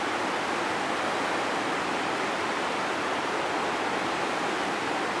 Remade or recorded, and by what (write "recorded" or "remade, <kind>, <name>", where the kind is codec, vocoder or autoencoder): recorded